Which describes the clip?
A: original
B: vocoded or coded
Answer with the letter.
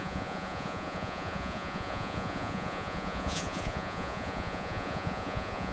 B